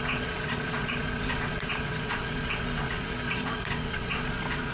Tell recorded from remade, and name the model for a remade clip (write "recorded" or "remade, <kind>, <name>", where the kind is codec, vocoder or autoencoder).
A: remade, vocoder, Vocos